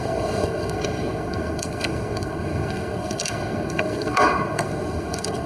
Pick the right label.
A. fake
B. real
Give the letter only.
A